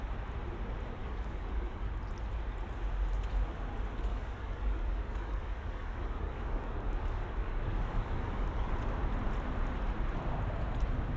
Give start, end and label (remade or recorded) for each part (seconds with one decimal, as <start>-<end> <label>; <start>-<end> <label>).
0.0-1.0 recorded; 1.0-1.9 remade; 1.9-4.1 recorded; 4.1-8.7 remade; 8.7-11.2 recorded